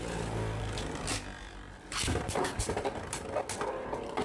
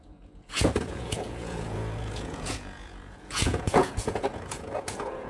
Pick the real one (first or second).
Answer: first